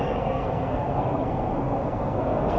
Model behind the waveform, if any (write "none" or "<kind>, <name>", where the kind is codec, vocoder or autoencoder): codec, SNAC